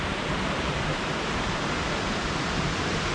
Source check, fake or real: fake